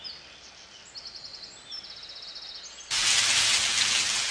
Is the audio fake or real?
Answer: real